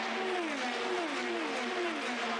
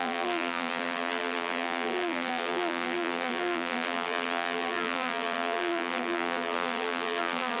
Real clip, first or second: first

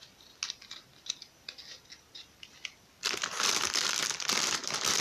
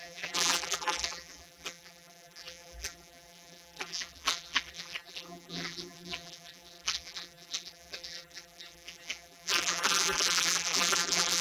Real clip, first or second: first